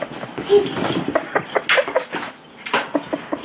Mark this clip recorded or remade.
recorded